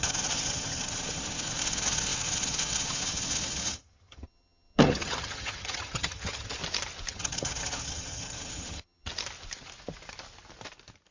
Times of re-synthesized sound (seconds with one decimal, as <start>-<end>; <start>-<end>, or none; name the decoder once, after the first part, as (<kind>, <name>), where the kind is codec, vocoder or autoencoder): 0.0-6.6 (vocoder, HiFi-GAN); 7.1-9.1

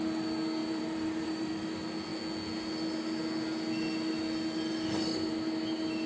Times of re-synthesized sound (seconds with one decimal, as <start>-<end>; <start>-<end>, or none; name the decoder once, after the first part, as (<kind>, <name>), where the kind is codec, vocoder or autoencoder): 0.6-1.5 (vocoder, BigVGAN v2)

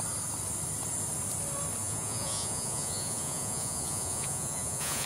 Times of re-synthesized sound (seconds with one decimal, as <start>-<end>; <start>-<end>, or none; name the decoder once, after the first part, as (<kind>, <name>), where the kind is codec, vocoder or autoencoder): 1.8-5.1 (vocoder, Vocos)

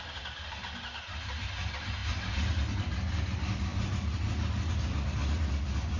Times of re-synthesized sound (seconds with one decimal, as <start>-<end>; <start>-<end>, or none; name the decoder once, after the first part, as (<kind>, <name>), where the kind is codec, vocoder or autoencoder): none

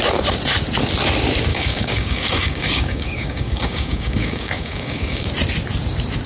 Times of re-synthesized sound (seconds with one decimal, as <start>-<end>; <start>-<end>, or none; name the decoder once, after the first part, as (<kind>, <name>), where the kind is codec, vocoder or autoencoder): 1.5-5.3 (codec, DAC)

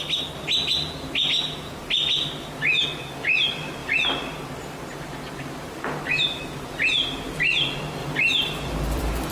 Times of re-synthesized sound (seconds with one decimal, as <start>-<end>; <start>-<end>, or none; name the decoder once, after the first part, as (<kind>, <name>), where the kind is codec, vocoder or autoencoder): 3.8-6.4 (vocoder, BigVGAN v2); 8.0-9.3

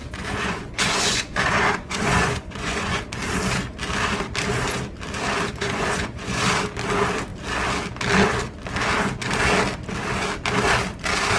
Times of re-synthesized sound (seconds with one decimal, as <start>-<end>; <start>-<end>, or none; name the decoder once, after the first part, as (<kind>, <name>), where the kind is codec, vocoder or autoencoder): 0.0-3.0 (vocoder, Vocos); 5.6-6.4

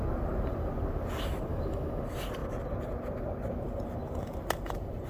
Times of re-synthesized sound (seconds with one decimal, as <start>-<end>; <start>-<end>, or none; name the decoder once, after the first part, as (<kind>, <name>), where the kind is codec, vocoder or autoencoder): 1.5-2.0 (autoencoder, DAC-VAE)